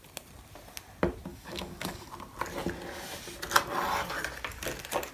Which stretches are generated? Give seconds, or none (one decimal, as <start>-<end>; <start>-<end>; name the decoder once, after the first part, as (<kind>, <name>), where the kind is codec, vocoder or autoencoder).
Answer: 1.3-2.1 (codec, DAC)